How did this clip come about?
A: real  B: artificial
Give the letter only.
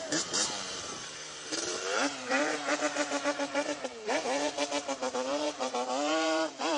B